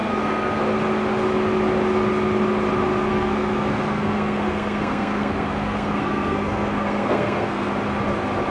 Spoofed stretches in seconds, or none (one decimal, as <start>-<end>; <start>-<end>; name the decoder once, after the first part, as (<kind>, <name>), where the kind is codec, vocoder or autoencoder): 0.0-0.6 (codec, SNAC); 3.1-7.7